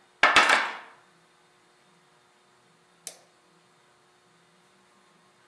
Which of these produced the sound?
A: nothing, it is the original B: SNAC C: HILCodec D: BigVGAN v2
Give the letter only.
A